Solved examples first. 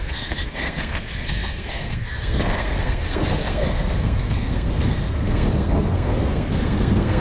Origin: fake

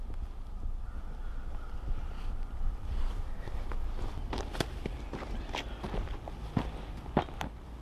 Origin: real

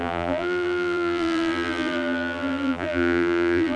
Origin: fake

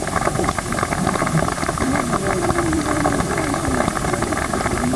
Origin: fake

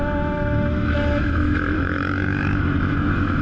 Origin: fake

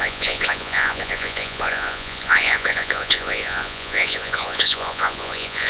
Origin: fake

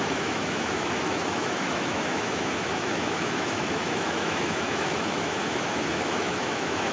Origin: fake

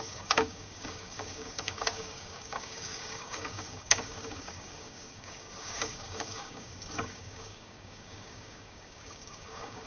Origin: fake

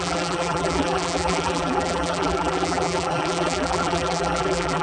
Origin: fake